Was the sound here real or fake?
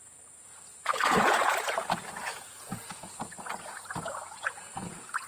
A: fake